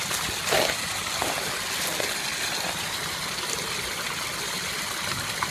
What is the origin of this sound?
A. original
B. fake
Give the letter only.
A